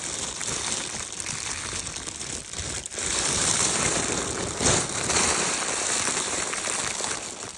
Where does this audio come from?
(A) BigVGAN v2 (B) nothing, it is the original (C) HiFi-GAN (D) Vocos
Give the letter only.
A